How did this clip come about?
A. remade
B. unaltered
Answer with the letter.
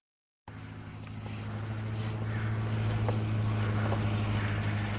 B